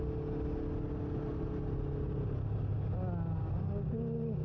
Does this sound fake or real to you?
real